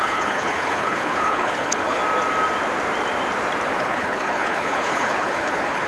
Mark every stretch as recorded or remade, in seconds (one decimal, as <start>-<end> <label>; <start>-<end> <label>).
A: 0.0-2.0 remade; 2.0-3.8 recorded; 3.8-5.9 remade